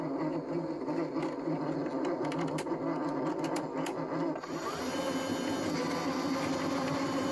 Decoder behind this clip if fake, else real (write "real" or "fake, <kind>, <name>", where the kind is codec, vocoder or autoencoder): real